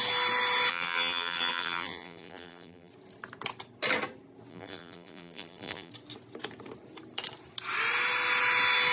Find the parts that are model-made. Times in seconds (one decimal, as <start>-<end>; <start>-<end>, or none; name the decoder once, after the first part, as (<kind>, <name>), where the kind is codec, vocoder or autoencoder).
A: 0.7-2.9 (vocoder, BigVGAN v2); 4.5-5.9